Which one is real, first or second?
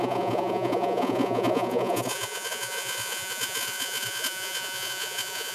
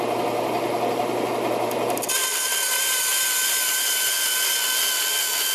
second